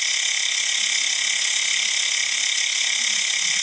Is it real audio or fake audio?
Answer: real